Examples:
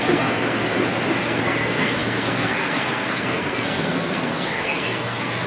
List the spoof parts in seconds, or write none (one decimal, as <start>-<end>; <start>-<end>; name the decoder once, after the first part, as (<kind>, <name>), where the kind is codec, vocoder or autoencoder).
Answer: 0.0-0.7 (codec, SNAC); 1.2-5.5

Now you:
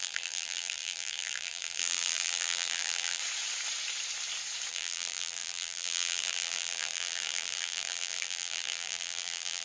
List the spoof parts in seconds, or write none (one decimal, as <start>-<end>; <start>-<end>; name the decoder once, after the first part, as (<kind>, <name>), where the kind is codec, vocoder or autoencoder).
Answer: 0.0-3.2 (vocoder, BigVGAN v2); 4.7-9.6

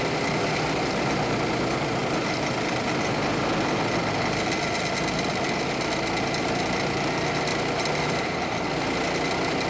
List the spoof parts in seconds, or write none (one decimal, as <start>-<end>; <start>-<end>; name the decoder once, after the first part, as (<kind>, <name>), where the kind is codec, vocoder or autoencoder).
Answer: none

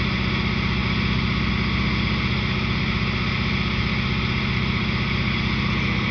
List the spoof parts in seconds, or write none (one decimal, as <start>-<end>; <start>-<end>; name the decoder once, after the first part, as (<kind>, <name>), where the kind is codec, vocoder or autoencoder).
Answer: none